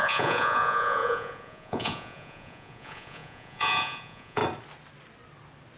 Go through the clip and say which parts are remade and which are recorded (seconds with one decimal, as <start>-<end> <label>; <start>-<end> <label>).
0.0-4.4 remade; 4.4-5.8 recorded